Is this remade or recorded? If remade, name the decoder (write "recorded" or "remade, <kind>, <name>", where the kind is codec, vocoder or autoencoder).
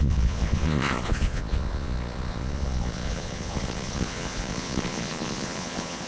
remade, vocoder, Vocos